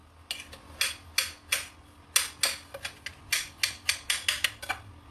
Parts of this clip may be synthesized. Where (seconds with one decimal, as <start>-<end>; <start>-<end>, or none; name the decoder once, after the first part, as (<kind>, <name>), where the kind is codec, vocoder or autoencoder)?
none